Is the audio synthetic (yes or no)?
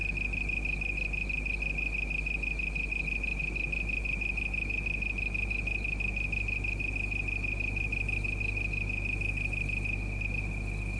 no